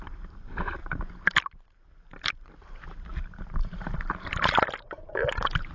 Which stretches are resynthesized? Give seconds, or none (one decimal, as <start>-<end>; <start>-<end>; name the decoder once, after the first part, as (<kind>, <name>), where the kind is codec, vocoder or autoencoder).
0.0-0.8 (vocoder, BigVGAN v2); 2.6-5.7